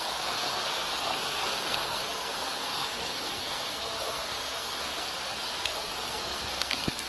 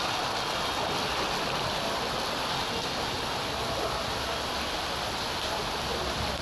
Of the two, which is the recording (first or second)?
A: second